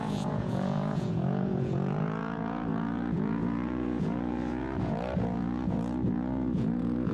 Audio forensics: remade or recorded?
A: remade